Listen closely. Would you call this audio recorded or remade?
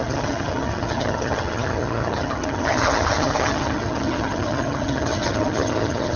remade